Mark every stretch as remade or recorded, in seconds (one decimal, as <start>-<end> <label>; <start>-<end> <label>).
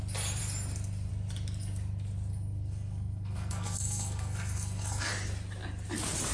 0.0-2.3 recorded; 2.3-5.1 remade; 5.1-6.3 recorded